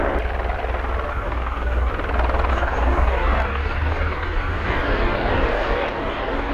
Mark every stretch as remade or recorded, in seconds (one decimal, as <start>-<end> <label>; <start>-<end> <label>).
0.0-1.1 recorded; 1.1-1.9 remade; 1.9-2.5 recorded; 2.5-6.5 remade